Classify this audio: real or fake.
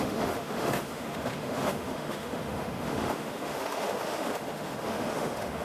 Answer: fake